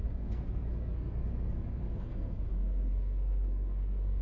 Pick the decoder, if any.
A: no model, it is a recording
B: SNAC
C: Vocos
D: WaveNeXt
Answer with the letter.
B